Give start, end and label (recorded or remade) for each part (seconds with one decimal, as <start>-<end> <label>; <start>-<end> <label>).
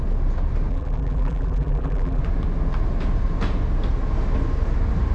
0.0-0.7 recorded; 0.7-2.2 remade; 2.2-5.1 recorded